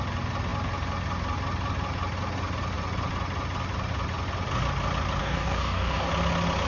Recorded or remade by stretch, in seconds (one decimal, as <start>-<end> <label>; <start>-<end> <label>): 0.0-5.2 recorded; 5.2-6.1 remade; 6.1-6.7 recorded